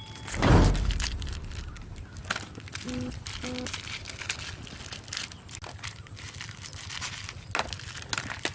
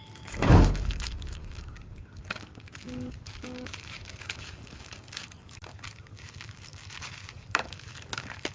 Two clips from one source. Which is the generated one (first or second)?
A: second